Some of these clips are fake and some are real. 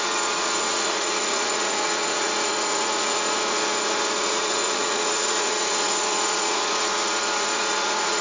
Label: fake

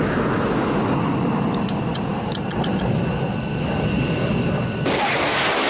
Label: real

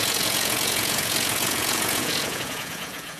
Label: fake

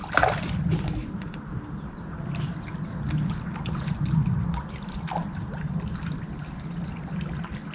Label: real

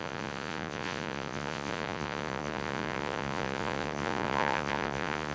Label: fake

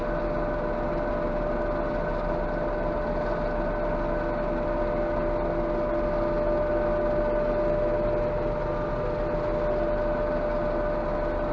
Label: real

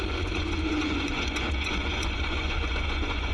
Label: fake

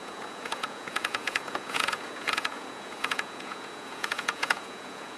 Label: fake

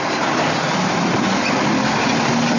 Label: real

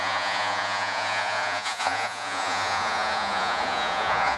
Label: fake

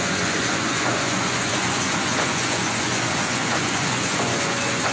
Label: fake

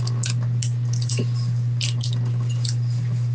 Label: real